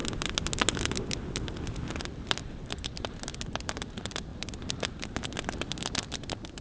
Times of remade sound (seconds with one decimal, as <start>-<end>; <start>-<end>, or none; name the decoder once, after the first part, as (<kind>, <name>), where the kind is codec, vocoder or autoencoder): 1.9-4.3 (vocoder, BigVGAN v2); 5.7-6.6